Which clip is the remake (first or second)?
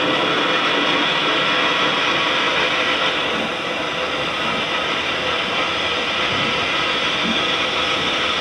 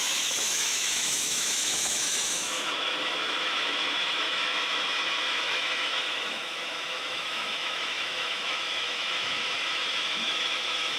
second